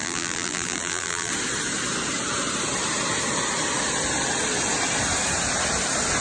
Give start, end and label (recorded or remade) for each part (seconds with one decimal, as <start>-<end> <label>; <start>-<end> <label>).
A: 0.0-1.3 remade; 1.3-6.2 recorded